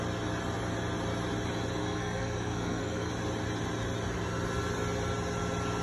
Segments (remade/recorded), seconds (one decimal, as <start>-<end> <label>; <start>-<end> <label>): 0.0-1.8 recorded; 1.8-3.1 remade; 3.1-5.8 recorded

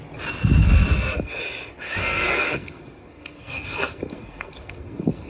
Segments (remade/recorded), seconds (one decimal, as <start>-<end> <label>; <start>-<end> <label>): 0.0-0.6 recorded; 0.6-1.4 remade; 1.4-2.0 recorded; 2.0-5.3 remade

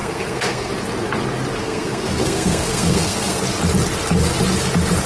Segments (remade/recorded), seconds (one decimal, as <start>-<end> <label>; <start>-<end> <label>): 0.0-0.7 remade; 0.7-1.6 recorded; 1.6-3.4 remade; 3.4-5.1 recorded

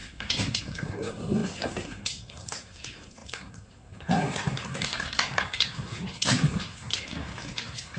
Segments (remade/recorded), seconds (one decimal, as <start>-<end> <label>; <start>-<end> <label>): 0.0-8.0 remade